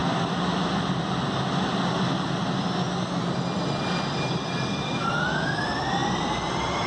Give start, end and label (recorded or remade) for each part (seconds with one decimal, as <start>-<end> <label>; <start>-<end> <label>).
0.0-6.9 recorded